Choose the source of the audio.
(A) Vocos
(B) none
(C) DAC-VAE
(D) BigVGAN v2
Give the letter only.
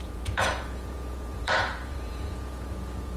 A